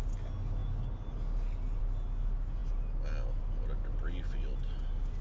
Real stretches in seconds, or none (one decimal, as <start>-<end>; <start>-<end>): 0.0-5.2